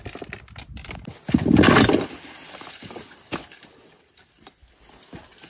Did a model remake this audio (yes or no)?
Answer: no